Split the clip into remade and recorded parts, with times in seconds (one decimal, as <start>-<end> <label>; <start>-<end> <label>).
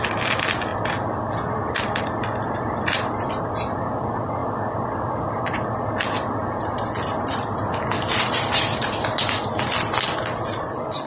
0.0-11.1 recorded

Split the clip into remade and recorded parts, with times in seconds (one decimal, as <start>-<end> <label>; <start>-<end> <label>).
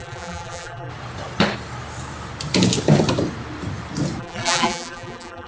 0.0-0.9 remade; 0.9-4.2 recorded; 4.2-5.5 remade